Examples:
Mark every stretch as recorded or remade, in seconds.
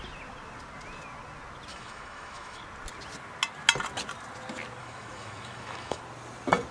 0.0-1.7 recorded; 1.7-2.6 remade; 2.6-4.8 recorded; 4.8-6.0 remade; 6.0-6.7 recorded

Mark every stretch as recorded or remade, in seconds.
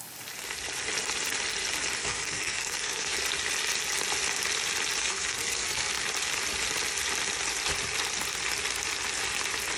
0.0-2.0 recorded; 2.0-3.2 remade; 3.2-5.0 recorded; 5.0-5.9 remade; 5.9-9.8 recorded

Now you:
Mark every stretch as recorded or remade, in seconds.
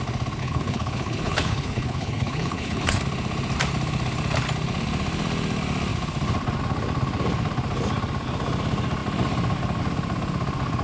0.0-0.4 recorded; 0.4-3.0 remade; 3.0-10.8 recorded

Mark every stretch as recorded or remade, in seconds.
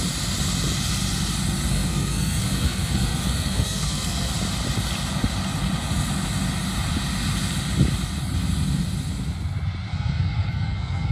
0.0-1.7 recorded; 1.7-4.3 remade; 4.3-9.9 recorded; 9.9-11.1 remade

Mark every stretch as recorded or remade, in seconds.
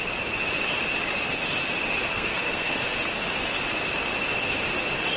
0.0-2.0 recorded; 2.0-2.8 remade; 2.8-5.2 recorded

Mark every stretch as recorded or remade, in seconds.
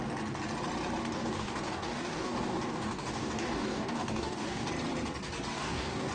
0.0-1.0 recorded; 1.0-4.7 remade; 4.7-5.5 recorded; 5.5-6.1 remade